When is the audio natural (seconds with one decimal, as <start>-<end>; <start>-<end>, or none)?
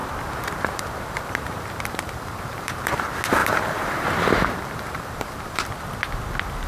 3.0-3.4; 5.7-6.7